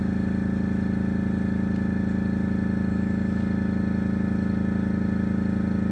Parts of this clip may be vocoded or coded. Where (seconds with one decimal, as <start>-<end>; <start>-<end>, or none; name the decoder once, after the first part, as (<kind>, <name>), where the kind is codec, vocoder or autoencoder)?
2.9-3.4 (autoencoder, DAC-VAE)